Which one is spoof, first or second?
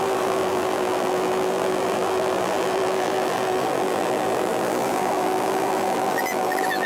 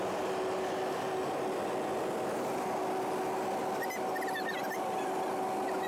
first